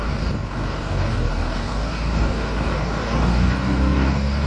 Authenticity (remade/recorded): remade